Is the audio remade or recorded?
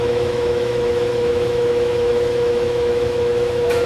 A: remade